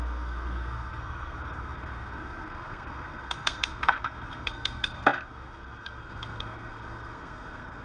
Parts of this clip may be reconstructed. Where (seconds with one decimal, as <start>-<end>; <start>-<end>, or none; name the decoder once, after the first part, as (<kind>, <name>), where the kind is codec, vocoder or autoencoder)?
0.0-7.8 (codec, SNAC)